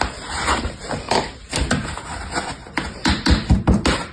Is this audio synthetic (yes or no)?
no